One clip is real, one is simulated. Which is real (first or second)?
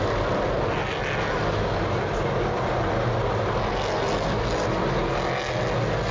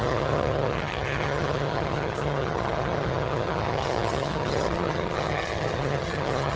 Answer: first